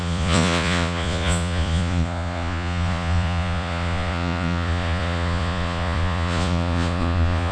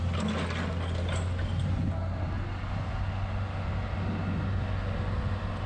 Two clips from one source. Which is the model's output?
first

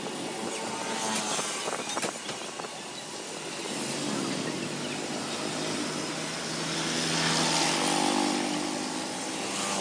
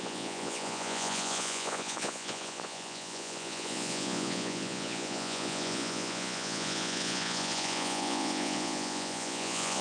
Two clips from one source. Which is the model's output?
second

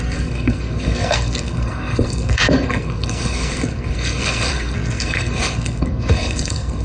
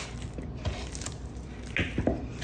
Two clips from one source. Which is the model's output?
first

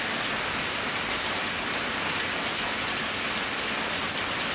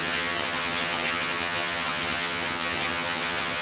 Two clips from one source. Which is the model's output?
second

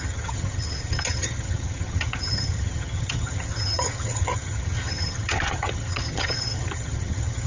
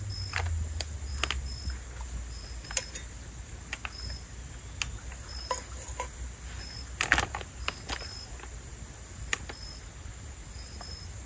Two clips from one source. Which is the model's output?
first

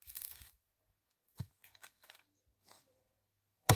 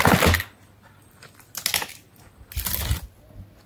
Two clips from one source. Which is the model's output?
first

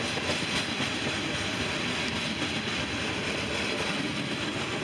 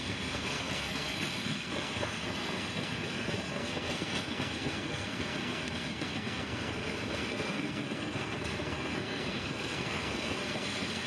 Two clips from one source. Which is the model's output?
second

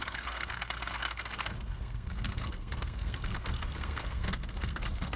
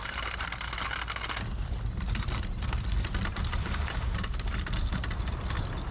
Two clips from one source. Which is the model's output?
first